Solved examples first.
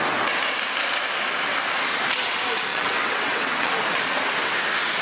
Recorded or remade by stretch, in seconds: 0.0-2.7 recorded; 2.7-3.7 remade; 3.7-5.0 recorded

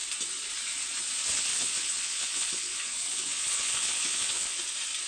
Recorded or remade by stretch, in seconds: 0.0-1.5 recorded; 1.5-4.6 remade; 4.6-5.1 recorded

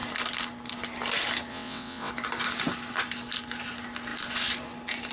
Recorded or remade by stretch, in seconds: 0.0-1.5 recorded; 1.5-2.1 remade; 2.1-5.1 recorded